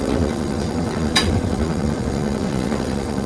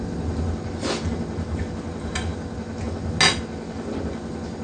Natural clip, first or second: second